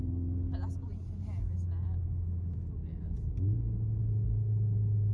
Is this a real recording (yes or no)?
yes